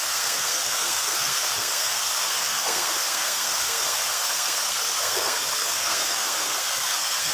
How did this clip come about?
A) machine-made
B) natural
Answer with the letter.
A